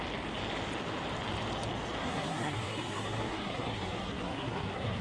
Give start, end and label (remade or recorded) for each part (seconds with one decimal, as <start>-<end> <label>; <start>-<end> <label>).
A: 0.0-2.0 recorded; 2.0-5.0 remade